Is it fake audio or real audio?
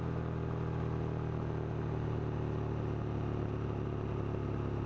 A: real